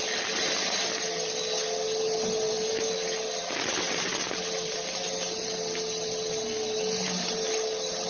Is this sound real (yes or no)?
yes